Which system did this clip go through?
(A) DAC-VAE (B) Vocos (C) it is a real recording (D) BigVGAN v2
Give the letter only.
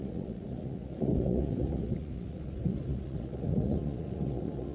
B